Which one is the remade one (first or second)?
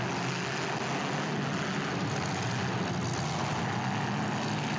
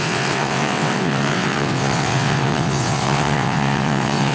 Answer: second